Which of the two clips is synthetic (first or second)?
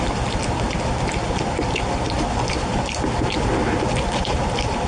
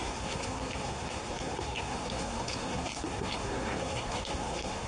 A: second